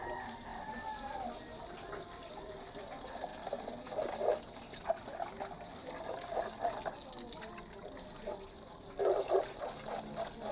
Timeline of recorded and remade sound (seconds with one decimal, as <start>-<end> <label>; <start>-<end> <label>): 0.0-0.5 recorded; 0.5-2.9 remade; 2.9-3.3 recorded; 3.3-4.2 remade; 4.2-10.5 recorded